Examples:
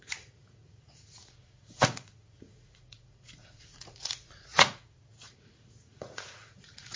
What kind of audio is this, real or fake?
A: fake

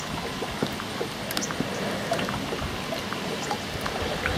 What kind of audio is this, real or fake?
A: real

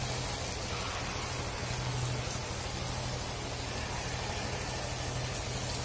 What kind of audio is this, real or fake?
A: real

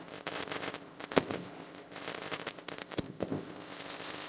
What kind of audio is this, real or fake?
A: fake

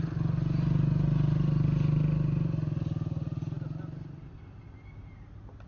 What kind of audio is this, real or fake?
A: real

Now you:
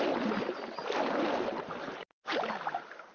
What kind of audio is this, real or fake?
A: real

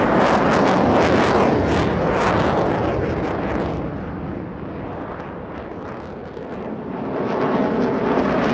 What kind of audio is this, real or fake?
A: real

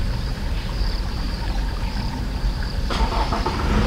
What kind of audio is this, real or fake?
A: fake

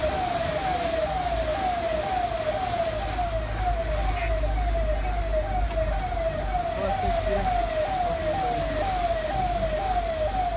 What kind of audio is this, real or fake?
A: real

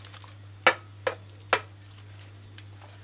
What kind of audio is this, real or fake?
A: real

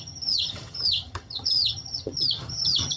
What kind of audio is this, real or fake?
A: fake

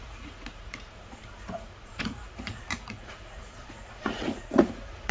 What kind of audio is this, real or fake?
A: fake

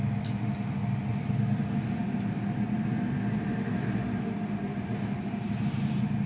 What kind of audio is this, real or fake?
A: real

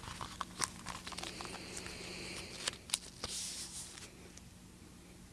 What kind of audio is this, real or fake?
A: real